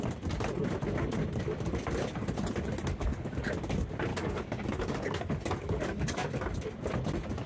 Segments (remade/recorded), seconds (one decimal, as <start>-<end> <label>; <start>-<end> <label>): 0.0-2.9 recorded; 2.9-3.5 remade; 3.5-4.1 recorded; 4.1-6.4 remade; 6.4-7.5 recorded